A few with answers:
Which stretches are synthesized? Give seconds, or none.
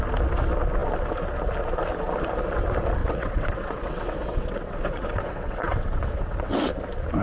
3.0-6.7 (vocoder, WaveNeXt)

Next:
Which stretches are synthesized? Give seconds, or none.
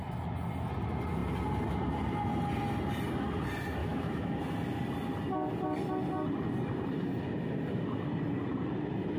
3.8-4.4 (autoencoder, DAC-VAE)